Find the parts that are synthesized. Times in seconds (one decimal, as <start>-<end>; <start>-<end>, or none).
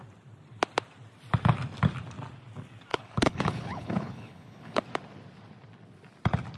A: 2.9-4.8